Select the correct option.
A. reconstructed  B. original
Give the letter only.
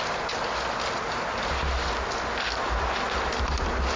B